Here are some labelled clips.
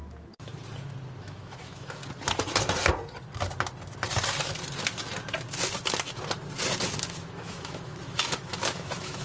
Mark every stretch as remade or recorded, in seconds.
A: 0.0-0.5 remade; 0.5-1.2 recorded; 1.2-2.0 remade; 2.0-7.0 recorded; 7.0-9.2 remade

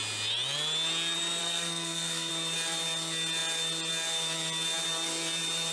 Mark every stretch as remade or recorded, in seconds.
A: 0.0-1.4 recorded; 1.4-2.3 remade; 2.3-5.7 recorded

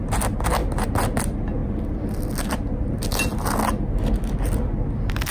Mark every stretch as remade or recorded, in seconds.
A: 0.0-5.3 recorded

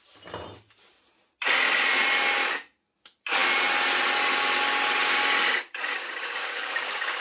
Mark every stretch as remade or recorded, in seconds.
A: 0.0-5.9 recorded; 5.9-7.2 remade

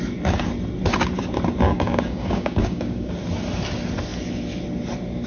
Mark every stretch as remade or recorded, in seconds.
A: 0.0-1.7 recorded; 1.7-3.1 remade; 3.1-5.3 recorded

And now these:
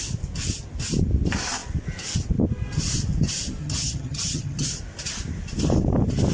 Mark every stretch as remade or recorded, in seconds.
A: 0.0-3.6 recorded; 3.6-4.7 remade; 4.7-6.3 recorded

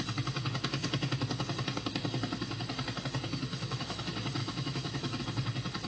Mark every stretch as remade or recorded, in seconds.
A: 0.0-3.5 recorded; 3.5-4.0 remade; 4.0-4.4 recorded; 4.4-5.2 remade; 5.2-5.9 recorded